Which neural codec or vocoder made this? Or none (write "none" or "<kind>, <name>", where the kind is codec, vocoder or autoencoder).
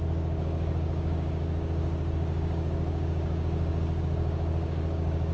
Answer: codec, DAC